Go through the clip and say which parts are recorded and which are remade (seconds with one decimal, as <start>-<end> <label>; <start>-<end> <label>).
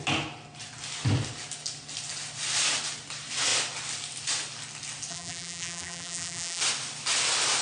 0.0-5.1 recorded; 5.1-6.6 remade; 6.6-7.6 recorded